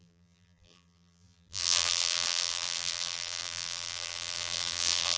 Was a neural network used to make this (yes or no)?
yes